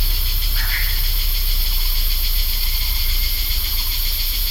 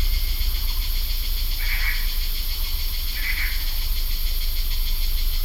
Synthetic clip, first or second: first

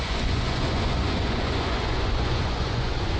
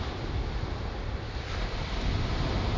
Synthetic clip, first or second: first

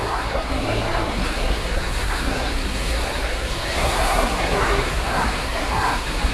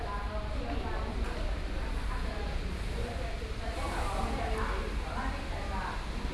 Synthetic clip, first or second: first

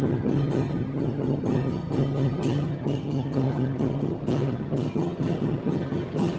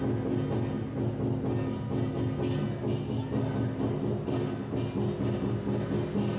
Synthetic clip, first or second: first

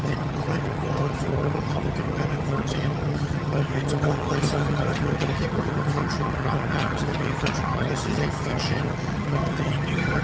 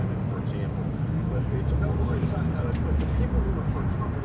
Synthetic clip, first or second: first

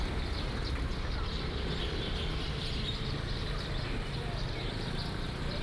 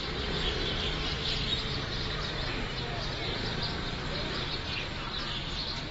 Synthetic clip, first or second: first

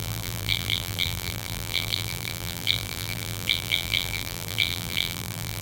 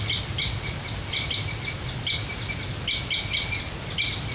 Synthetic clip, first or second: first